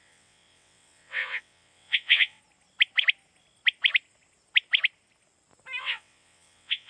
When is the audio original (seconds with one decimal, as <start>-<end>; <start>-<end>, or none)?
2.4-5.8